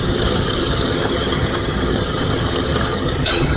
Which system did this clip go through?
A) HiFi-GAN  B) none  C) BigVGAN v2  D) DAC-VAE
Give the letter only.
A